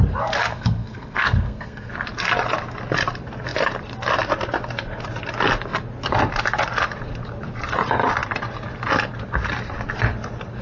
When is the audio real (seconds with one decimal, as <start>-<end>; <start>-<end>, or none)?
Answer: 0.0-0.5; 1.9-10.6